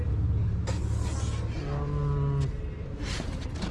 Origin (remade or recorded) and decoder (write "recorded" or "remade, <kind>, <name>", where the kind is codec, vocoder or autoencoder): recorded